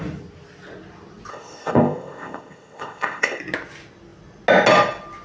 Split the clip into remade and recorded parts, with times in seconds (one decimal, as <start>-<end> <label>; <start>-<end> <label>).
0.0-1.3 recorded; 1.3-3.4 remade; 3.4-5.2 recorded

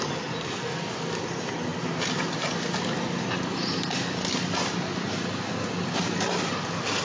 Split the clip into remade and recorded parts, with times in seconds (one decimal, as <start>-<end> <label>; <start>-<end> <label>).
0.0-7.0 recorded

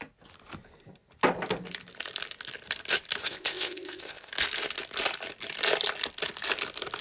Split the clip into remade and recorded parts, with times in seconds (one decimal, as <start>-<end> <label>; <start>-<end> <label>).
0.0-3.2 recorded; 3.2-4.3 remade; 4.3-7.0 recorded